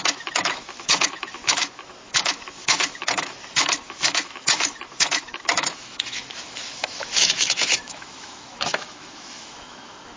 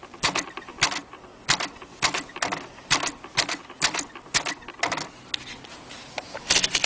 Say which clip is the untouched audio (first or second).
second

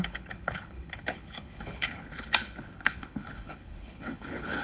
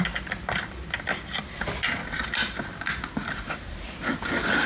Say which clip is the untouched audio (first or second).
second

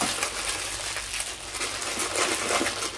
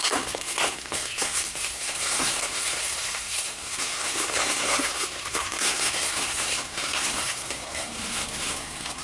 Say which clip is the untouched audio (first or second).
first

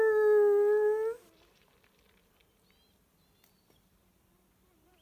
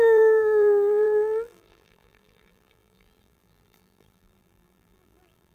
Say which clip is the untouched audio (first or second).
first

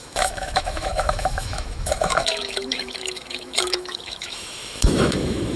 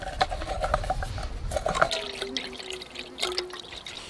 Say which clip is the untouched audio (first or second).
second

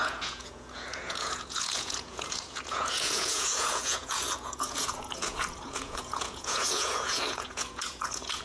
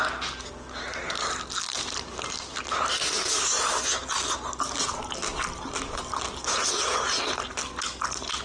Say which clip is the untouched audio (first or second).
second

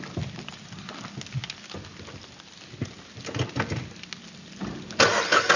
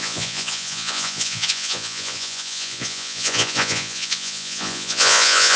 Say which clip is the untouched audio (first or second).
first